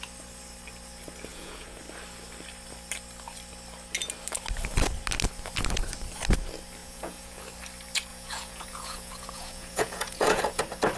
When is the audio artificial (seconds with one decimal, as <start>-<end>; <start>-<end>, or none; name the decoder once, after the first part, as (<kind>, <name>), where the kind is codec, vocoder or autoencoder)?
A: 1.3-1.8 (vocoder, Vocos); 6.8-7.4; 8.1-10.6